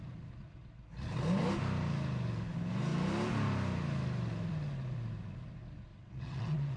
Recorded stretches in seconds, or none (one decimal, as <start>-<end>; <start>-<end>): 0.0-5.9